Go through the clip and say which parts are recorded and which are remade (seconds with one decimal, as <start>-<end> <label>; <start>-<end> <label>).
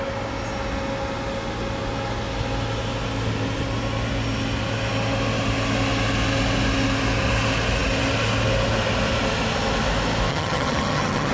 0.0-10.3 recorded; 10.3-11.3 remade